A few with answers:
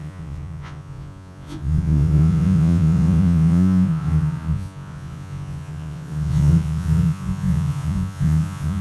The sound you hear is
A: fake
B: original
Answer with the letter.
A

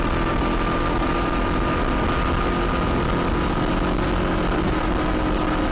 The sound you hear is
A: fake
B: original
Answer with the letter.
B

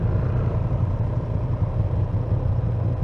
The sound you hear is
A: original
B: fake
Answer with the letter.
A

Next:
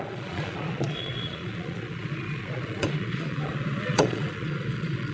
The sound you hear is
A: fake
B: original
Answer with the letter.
A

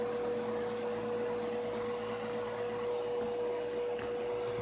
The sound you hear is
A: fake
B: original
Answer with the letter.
B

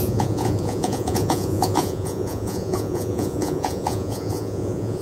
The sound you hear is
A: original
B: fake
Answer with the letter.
B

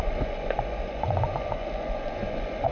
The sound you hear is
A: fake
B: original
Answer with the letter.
A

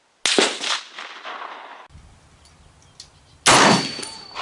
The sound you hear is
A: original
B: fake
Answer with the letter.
A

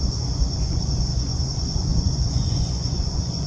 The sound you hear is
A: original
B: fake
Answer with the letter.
B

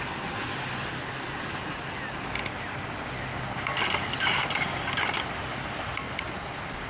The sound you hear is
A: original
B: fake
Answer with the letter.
A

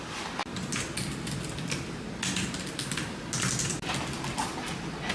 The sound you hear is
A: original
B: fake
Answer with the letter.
A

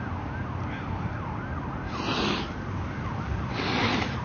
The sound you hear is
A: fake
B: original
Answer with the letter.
B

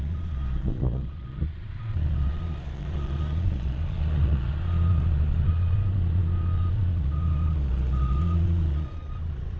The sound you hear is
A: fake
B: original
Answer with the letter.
A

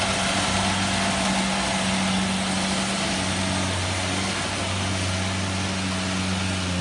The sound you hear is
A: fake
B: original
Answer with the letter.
B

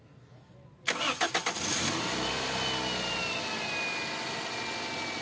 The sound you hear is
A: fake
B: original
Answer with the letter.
B